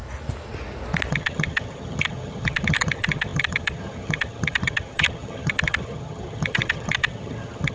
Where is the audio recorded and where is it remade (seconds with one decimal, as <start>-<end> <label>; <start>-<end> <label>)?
0.0-1.1 recorded; 1.1-7.7 remade